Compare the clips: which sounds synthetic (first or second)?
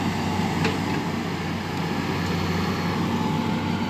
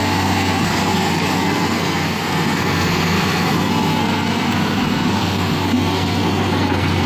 second